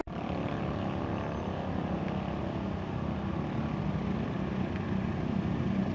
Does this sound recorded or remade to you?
recorded